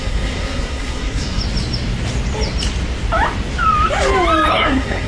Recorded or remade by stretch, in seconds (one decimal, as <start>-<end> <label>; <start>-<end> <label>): 0.0-1.4 remade; 1.4-4.5 recorded; 4.5-5.1 remade